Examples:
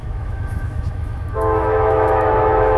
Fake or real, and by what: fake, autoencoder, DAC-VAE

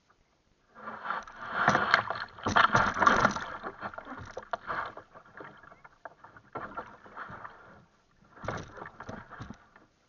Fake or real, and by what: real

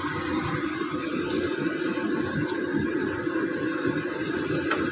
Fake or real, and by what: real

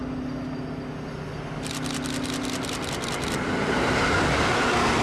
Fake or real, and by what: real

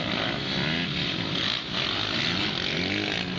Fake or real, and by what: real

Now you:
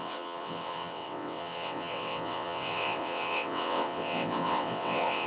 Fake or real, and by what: fake, vocoder, WaveNeXt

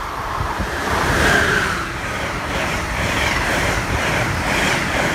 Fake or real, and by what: fake, vocoder, BigVGAN v2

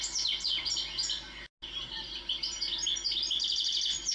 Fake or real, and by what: real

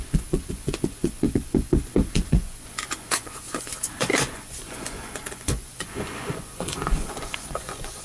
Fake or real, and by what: fake, vocoder, Vocos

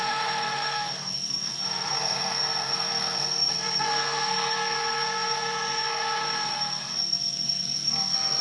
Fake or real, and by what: fake, codec, SNAC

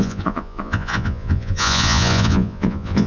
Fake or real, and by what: fake, vocoder, Vocos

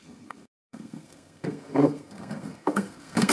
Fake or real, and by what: fake, codec, SNAC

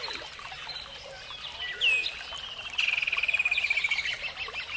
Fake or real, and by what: real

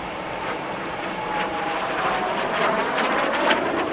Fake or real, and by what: fake, vocoder, BigVGAN v2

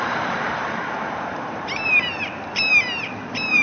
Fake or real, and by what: fake, vocoder, BigVGAN v2